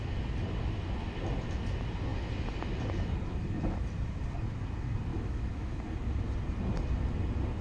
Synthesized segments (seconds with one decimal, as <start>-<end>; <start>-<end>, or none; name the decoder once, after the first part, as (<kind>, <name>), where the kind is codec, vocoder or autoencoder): 5.1-5.8 (autoencoder, DAC-VAE)